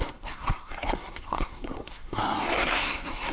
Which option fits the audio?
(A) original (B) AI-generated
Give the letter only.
B